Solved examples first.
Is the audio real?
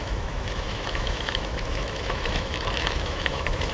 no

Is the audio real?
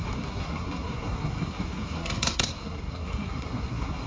no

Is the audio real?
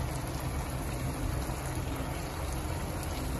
yes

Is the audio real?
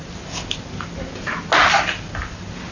yes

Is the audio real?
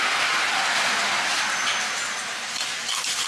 yes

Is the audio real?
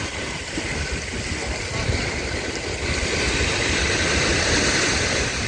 yes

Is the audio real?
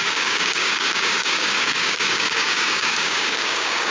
no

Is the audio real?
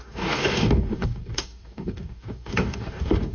no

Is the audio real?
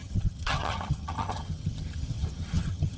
no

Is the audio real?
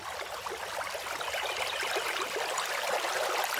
yes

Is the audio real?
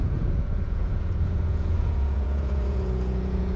no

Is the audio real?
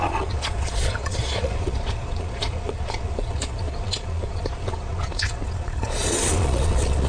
no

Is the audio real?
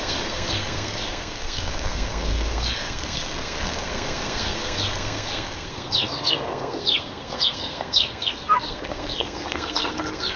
no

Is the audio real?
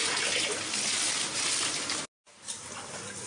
yes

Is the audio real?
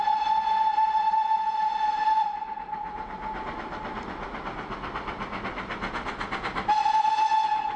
yes